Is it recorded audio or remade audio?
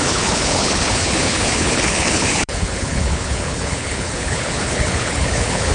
remade